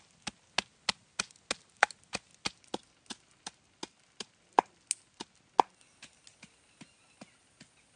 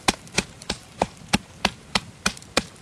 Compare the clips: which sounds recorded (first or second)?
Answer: first